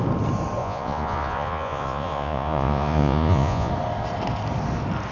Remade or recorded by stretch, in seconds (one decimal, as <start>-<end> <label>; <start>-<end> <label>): 0.0-0.6 recorded; 0.6-3.7 remade; 3.7-5.1 recorded